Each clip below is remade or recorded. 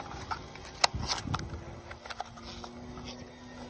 recorded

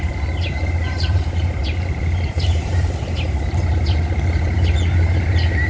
remade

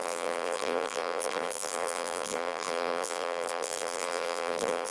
remade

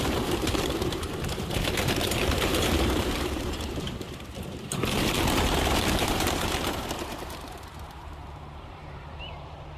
remade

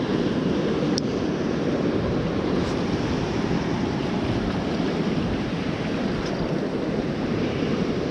remade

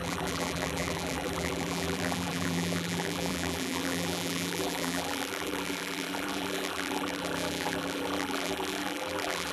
remade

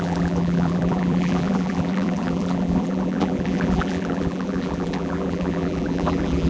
remade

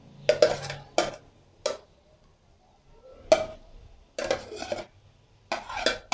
recorded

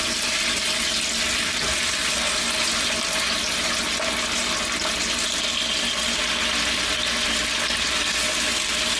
recorded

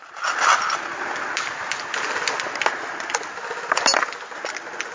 recorded